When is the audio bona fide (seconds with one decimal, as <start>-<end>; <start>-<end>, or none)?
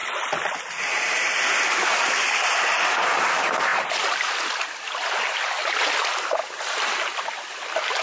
0.0-0.6